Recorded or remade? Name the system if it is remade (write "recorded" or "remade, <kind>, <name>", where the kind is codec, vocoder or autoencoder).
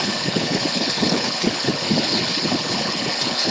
remade, codec, HILCodec